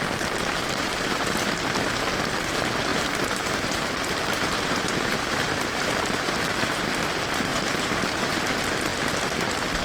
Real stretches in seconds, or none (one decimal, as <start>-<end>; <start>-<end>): 0.0-2.9; 6.9-7.5; 8.4-9.8